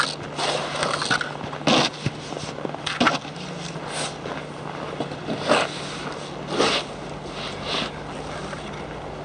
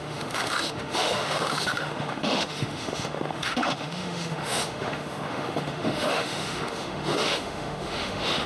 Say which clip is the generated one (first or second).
second